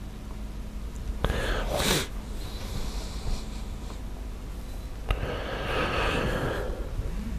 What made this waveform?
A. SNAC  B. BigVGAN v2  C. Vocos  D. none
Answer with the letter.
D